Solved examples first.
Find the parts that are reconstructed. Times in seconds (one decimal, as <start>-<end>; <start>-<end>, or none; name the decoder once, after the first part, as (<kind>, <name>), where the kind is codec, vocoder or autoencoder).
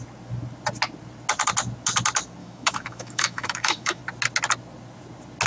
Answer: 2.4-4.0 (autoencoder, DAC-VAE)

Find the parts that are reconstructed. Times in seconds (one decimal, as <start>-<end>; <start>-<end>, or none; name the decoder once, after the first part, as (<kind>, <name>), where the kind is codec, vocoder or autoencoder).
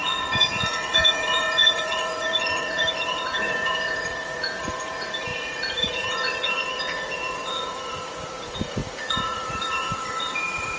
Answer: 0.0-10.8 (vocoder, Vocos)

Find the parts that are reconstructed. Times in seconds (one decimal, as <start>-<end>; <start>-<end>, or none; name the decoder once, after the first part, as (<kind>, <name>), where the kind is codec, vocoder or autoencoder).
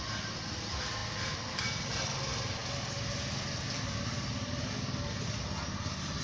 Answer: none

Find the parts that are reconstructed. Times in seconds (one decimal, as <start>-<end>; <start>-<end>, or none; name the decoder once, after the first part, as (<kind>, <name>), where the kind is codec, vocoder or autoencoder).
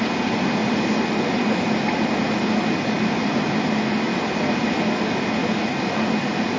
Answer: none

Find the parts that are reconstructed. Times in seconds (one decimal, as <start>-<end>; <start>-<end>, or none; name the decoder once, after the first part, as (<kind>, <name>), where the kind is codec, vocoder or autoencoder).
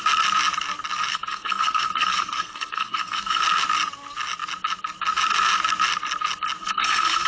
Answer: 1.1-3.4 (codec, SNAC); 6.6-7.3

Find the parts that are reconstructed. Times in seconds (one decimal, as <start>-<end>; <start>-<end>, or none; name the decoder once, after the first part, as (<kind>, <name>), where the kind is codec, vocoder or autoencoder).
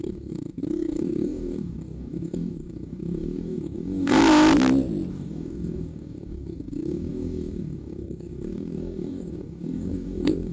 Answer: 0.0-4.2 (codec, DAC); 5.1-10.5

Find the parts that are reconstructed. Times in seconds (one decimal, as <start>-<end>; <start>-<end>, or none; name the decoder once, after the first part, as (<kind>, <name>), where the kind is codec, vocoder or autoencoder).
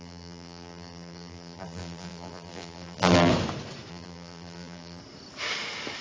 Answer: 0.0-3.3 (vocoder, BigVGAN v2); 3.9-5.0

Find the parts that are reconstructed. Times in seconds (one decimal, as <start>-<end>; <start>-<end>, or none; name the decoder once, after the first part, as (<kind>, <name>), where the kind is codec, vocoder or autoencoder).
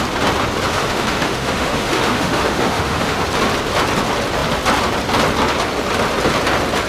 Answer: 0.7-3.2 (autoencoder, DAC-VAE)